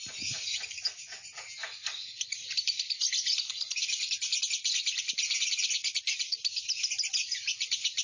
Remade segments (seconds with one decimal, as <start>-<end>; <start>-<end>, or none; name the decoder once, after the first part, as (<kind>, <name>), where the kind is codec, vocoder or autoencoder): none